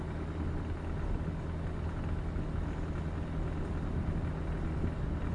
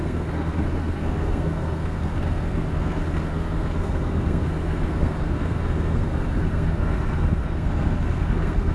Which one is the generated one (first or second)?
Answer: second